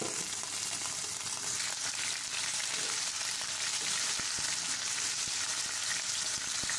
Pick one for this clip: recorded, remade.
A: recorded